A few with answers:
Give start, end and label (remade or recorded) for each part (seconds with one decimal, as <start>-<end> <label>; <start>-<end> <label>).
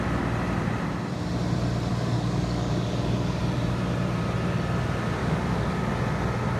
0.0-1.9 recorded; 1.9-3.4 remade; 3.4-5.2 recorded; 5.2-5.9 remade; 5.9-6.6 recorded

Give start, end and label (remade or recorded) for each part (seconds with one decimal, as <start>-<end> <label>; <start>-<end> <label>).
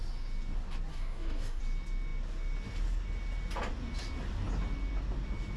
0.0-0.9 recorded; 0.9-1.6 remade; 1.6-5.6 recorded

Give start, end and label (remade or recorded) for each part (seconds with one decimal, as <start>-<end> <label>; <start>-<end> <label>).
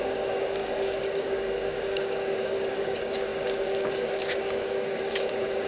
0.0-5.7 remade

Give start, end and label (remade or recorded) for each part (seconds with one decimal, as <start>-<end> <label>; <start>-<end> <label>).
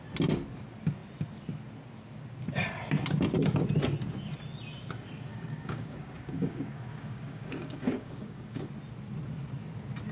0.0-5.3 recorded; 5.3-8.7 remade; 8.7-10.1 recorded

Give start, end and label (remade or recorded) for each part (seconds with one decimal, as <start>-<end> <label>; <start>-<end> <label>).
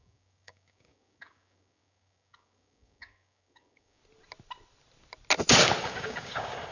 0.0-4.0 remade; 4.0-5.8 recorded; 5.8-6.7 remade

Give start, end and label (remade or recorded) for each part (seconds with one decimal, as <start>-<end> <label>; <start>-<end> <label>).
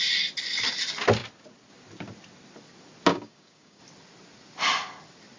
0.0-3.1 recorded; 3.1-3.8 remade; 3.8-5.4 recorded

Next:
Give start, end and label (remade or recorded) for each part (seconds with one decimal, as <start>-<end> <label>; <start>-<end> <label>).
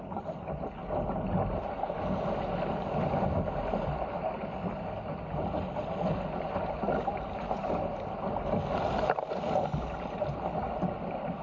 0.0-11.4 recorded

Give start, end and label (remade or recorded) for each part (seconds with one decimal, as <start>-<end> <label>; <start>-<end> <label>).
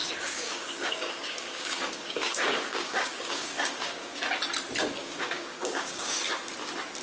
0.0-4.2 remade; 4.2-5.0 recorded; 5.0-6.2 remade; 6.2-7.0 recorded